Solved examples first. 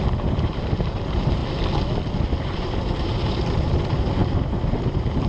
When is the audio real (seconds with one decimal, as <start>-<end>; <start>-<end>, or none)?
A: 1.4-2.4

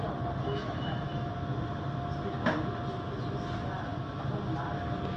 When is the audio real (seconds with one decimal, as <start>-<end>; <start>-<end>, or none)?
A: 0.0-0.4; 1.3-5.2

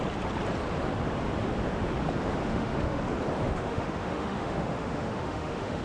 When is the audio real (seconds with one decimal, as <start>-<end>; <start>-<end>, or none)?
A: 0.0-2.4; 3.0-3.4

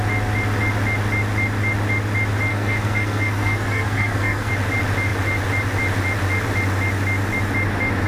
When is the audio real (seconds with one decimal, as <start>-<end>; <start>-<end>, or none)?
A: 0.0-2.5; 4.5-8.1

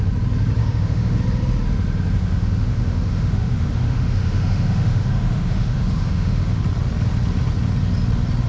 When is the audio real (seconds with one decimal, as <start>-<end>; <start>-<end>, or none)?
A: 0.0-0.6; 1.2-2.2; 6.6-8.5